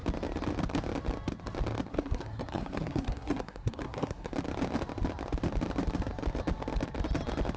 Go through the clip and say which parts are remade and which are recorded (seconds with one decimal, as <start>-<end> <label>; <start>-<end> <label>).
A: 0.0-1.9 recorded; 1.9-4.3 remade; 4.3-7.6 recorded